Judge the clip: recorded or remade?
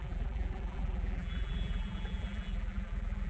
remade